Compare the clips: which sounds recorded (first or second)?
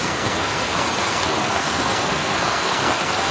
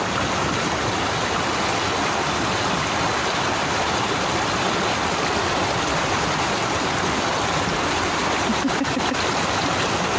second